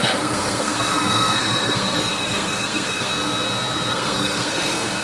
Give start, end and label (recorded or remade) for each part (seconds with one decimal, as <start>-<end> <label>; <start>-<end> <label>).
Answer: 0.0-3.1 remade; 3.1-3.9 recorded; 3.9-5.0 remade